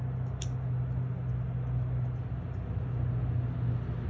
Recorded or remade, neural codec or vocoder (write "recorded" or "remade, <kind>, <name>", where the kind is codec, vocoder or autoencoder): recorded